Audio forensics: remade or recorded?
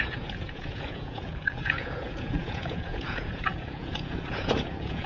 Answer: remade